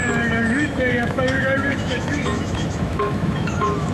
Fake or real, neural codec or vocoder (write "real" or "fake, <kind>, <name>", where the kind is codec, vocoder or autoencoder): fake, autoencoder, DAC-VAE